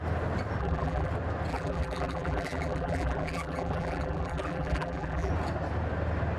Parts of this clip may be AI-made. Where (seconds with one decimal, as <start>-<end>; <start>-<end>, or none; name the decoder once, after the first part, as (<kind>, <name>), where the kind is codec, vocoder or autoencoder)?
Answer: 0.6-1.1 (vocoder, BigVGAN v2); 1.5-5.3